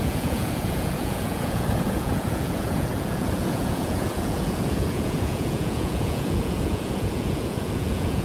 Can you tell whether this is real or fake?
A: fake